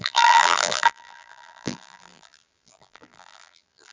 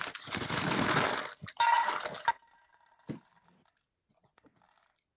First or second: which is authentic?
second